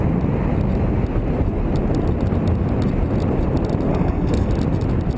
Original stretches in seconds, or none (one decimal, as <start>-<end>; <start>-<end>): 0.0-3.9; 4.5-5.2